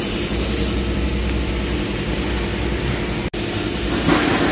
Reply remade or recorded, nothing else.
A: recorded